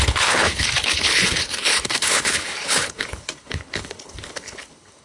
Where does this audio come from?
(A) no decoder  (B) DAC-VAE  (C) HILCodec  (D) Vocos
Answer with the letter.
C